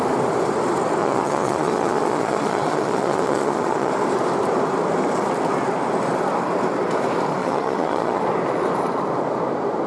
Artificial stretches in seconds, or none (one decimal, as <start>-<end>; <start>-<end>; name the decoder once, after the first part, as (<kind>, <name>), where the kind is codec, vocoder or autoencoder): 1.0-3.9 (vocoder, Vocos); 7.4-8.2